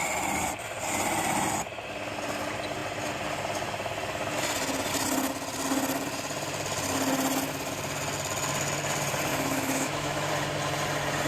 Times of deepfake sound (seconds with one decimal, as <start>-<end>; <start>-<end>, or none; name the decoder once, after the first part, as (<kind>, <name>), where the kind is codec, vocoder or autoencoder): 9.3-10.3 (autoencoder, DAC-VAE)